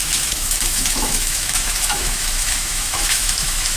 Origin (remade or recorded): remade